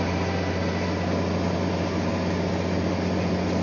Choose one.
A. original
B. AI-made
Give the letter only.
A